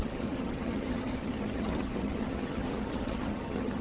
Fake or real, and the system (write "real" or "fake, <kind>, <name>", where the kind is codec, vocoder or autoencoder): fake, vocoder, HiFi-GAN